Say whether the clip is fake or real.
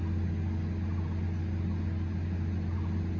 real